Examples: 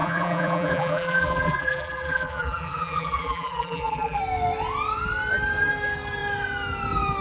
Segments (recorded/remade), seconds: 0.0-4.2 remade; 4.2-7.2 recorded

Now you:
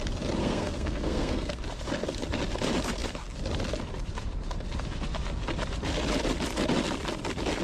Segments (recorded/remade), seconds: 0.0-0.4 recorded; 0.4-1.6 remade; 1.6-7.6 recorded

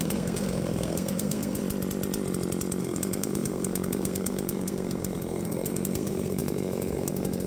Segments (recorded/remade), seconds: 0.0-1.6 remade; 1.6-2.8 recorded; 2.8-7.5 remade

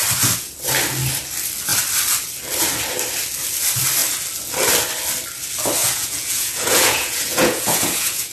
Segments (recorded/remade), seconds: 0.0-5.8 recorded; 5.8-8.3 remade

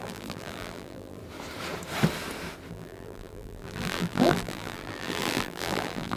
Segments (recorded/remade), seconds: 0.0-1.2 remade; 1.2-2.7 recorded; 2.7-6.2 remade